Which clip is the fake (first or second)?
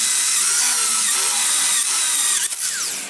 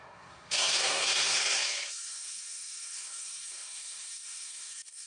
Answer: second